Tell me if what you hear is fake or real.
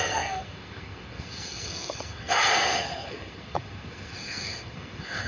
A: fake